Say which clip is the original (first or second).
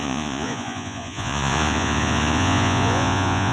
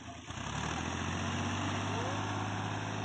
second